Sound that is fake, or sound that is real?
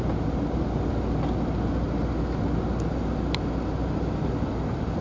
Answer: real